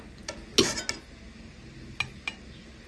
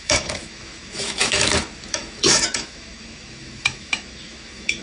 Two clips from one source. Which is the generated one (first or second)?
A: second